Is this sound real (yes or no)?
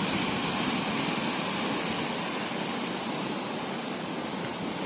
yes